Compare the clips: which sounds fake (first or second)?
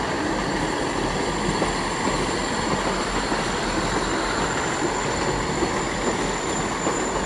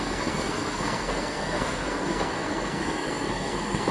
second